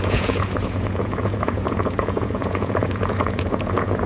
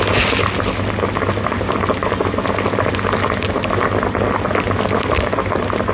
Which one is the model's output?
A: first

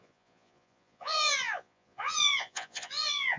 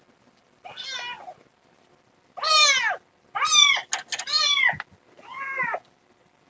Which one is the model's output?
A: first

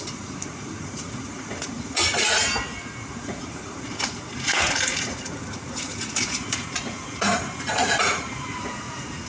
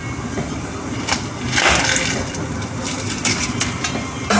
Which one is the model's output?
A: first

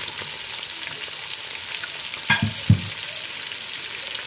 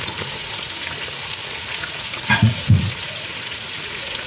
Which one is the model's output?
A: second